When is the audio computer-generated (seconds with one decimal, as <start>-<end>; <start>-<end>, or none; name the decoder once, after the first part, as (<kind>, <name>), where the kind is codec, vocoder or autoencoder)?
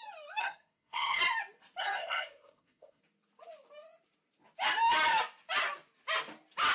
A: 0.4-1.2 (codec, SNAC); 1.8-3.0